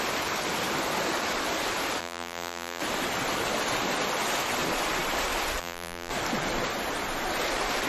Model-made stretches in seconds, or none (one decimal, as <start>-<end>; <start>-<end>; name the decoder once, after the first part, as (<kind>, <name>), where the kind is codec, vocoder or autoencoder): 2.0-2.8 (vocoder, BigVGAN v2); 5.6-6.1